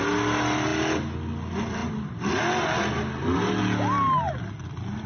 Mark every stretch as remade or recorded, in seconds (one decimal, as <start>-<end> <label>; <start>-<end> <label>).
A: 0.0-5.1 recorded